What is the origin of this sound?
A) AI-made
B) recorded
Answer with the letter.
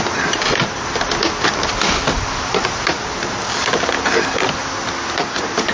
B